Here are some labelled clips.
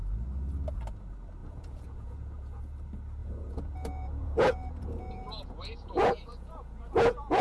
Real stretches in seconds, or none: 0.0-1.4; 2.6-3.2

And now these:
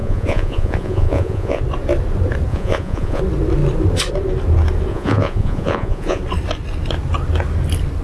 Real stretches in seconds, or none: 1.6-2.5; 3.2-4.9; 6.2-8.0